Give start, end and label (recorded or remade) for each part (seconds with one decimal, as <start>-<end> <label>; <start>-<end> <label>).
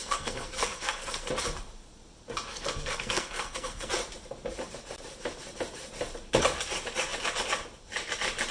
0.0-1.3 remade; 1.3-2.5 recorded; 2.5-3.9 remade; 3.9-8.5 recorded